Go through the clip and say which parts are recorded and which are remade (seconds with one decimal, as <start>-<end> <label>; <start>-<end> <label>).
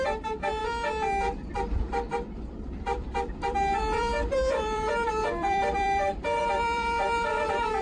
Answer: 0.0-0.6 remade; 0.6-1.5 recorded; 1.5-7.8 remade